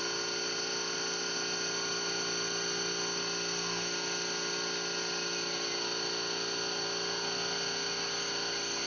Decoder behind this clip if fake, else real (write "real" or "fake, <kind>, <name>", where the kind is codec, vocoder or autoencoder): real